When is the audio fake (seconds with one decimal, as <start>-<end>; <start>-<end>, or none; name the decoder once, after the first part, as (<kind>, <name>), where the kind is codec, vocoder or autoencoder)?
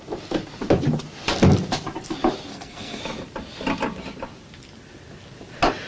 2.5-3.0 (codec, SNAC)